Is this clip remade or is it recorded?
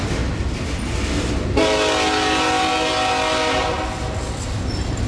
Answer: recorded